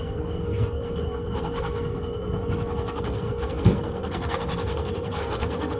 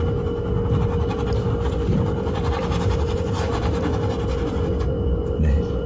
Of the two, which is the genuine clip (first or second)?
second